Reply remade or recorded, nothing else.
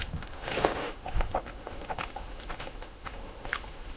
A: remade